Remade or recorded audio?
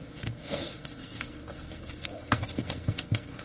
remade